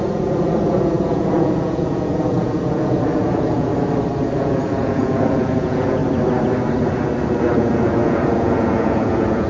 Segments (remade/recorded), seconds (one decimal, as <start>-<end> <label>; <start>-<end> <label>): 0.0-3.7 remade; 3.7-4.4 recorded; 4.4-6.0 remade; 6.0-7.5 recorded; 7.5-9.5 remade